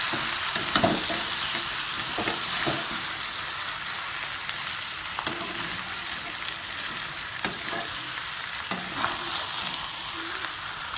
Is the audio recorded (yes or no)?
yes